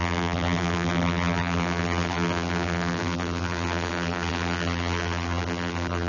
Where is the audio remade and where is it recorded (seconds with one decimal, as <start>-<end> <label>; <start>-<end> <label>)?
0.0-6.1 remade